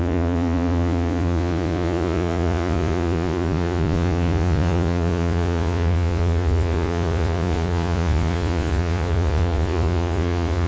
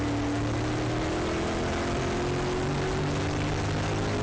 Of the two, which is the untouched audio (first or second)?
second